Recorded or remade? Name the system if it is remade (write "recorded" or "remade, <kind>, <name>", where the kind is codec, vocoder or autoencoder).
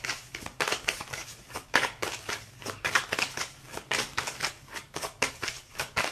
remade, codec, DAC